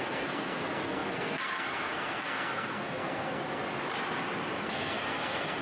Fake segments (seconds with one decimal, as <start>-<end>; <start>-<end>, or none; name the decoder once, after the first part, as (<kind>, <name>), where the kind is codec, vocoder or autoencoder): 0.0-3.6 (codec, SNAC); 4.6-5.6